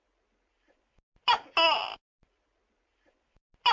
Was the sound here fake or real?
real